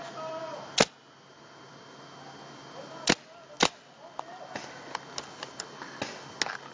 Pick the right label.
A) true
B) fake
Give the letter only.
A